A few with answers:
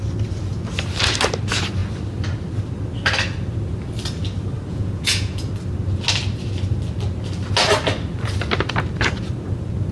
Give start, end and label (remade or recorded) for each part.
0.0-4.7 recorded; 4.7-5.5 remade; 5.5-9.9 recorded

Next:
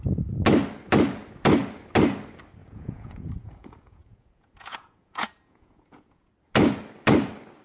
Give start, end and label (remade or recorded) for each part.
0.0-2.6 recorded; 2.6-6.3 remade; 6.3-7.6 recorded

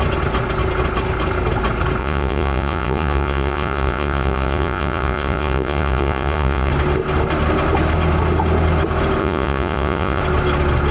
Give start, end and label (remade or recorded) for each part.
0.0-2.0 recorded; 2.0-6.7 remade; 6.7-9.2 recorded; 9.2-10.2 remade; 10.2-10.9 recorded

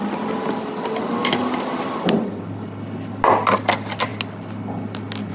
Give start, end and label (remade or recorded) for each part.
0.0-5.3 recorded

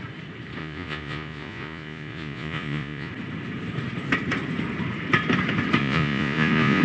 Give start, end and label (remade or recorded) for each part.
0.0-0.6 recorded; 0.6-3.1 remade; 3.1-5.8 recorded; 5.8-6.8 remade

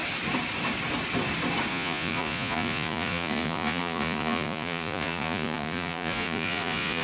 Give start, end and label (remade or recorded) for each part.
0.0-1.7 recorded; 1.7-7.0 remade

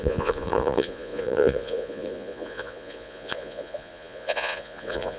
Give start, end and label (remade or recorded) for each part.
0.0-5.2 remade

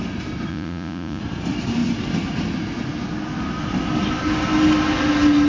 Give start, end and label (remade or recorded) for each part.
0.0-0.5 recorded; 0.5-1.2 remade; 1.2-5.5 recorded